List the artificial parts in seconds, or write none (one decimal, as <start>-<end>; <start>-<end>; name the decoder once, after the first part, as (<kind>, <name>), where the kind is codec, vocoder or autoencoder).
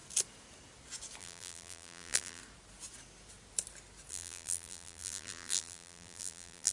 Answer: 1.2-2.4 (vocoder, BigVGAN v2); 4.1-6.7